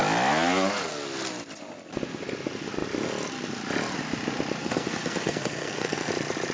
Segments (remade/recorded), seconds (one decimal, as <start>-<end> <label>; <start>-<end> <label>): 0.0-4.6 recorded; 4.6-6.1 remade; 6.1-6.5 recorded